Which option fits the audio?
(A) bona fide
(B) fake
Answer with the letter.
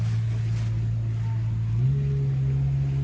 A